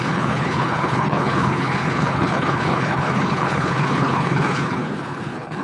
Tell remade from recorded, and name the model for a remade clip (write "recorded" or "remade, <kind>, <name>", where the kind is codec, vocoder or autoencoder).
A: remade, codec, HILCodec